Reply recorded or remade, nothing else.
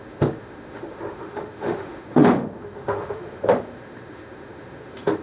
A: remade